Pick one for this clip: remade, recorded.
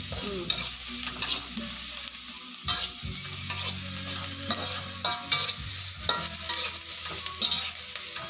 recorded